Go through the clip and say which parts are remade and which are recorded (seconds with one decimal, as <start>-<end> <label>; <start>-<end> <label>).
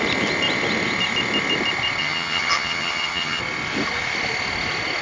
0.0-2.0 recorded; 2.0-3.4 remade; 3.4-5.0 recorded